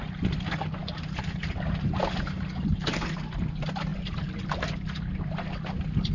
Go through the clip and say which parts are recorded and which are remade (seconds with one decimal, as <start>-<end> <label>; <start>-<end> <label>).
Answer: 0.0-6.1 recorded